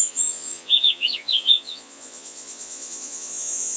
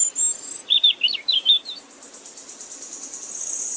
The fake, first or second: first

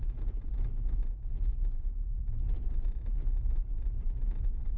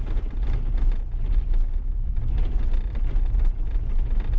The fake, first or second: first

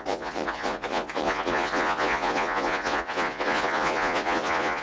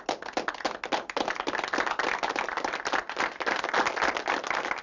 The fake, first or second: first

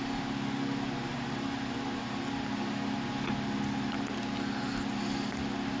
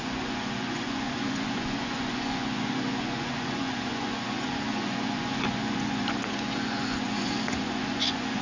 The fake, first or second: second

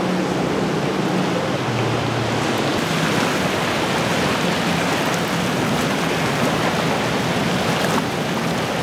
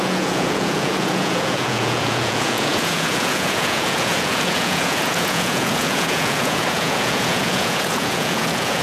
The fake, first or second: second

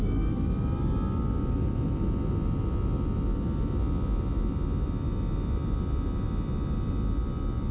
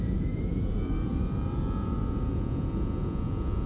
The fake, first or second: second